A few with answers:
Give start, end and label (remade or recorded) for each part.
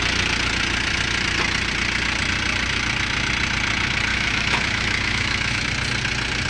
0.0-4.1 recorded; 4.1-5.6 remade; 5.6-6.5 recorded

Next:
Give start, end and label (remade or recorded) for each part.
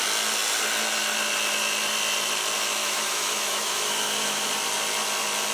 0.0-2.8 recorded; 2.8-4.5 remade; 4.5-5.5 recorded